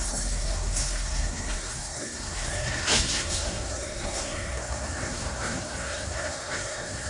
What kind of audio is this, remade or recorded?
remade